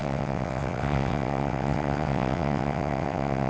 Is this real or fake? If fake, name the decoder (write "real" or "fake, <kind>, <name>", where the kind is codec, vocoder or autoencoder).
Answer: fake, vocoder, WaveNeXt